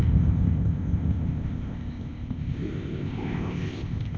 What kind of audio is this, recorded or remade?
remade